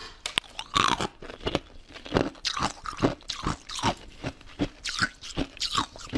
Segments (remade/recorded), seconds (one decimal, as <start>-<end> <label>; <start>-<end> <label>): 0.0-6.2 recorded